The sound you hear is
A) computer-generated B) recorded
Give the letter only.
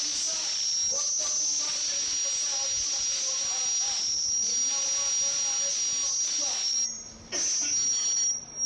B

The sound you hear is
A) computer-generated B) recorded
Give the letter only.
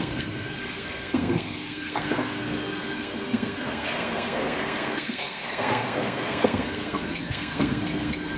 A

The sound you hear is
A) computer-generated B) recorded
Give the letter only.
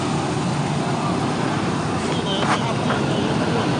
B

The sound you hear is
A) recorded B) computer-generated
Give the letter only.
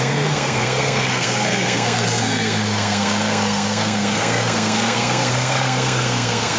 B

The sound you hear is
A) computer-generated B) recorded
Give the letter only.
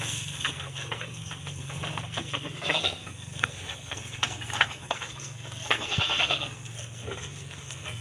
A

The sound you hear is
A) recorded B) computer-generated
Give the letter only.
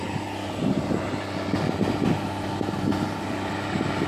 A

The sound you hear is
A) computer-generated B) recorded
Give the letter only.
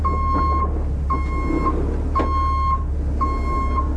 B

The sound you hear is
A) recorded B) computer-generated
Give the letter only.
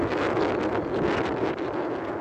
A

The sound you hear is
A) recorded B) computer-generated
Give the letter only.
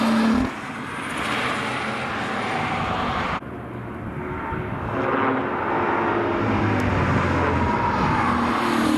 A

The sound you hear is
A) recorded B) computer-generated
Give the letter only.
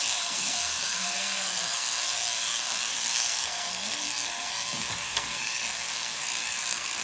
B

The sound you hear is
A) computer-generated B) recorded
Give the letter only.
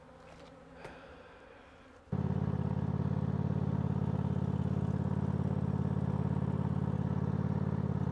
B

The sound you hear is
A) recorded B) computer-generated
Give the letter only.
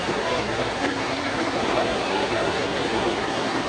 B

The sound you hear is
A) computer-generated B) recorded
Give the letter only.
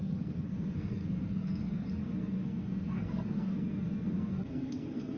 A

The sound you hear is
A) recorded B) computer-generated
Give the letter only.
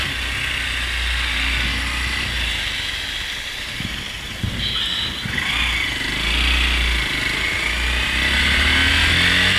A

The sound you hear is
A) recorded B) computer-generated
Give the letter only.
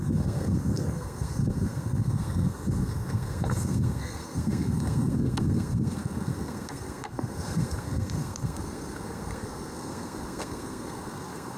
B